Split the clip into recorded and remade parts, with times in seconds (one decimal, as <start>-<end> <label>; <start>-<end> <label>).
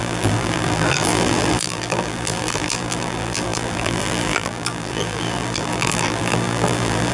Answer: 0.0-7.1 remade